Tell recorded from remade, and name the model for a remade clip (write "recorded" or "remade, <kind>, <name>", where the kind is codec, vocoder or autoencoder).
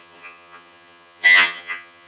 remade, vocoder, HiFi-GAN